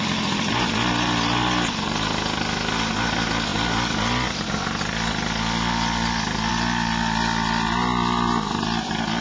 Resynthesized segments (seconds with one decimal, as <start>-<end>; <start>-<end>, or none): none